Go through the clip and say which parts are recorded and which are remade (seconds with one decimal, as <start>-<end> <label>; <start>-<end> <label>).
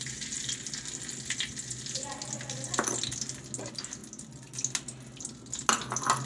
0.0-6.3 recorded